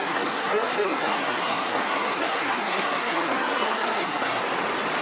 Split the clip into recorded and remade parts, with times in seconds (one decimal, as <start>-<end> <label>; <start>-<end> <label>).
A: 0.0-4.4 remade; 4.4-5.0 recorded